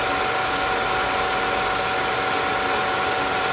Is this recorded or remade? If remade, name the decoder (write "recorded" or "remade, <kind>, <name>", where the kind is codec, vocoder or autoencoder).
recorded